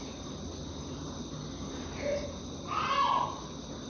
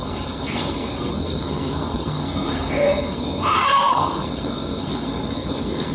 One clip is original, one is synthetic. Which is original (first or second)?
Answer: first